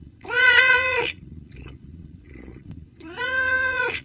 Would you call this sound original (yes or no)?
no